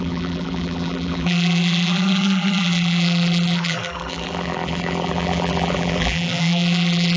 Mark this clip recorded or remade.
remade